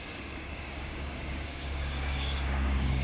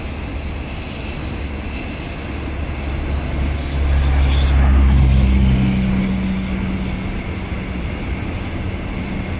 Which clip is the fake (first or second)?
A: first